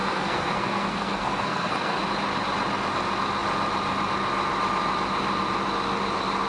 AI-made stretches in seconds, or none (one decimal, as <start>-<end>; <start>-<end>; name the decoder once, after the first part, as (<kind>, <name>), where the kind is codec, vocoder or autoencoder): 0.0-2.0 (codec, SNAC)